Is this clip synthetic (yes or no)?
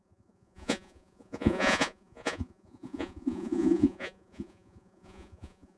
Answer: yes